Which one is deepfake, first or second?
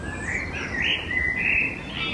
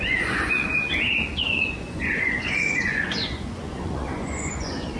second